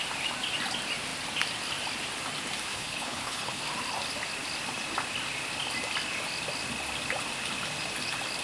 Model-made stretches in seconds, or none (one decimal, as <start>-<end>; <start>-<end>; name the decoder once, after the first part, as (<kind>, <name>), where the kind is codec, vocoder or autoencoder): 2.7-3.6 (codec, HILCodec)